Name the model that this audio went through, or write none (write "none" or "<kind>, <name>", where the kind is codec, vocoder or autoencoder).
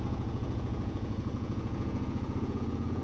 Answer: vocoder, Vocos